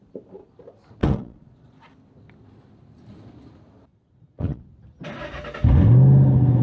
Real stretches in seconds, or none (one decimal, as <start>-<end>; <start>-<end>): 0.0-1.0; 1.9-3.9; 4.6-6.6